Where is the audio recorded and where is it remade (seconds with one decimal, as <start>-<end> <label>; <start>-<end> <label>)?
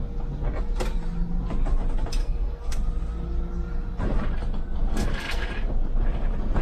0.0-2.2 recorded; 2.2-2.7 remade; 2.7-4.9 recorded; 4.9-5.5 remade; 5.5-6.6 recorded